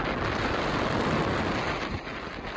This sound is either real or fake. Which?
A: real